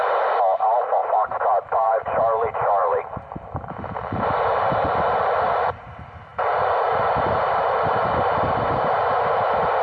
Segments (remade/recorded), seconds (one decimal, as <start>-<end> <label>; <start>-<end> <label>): 0.0-1.0 recorded; 1.0-3.3 remade; 3.3-6.3 recorded; 6.3-8.1 remade; 8.1-9.8 recorded